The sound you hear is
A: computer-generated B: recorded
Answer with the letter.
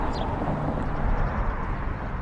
B